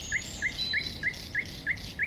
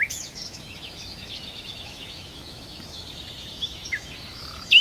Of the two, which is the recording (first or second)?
first